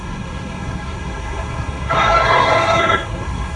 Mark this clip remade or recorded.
remade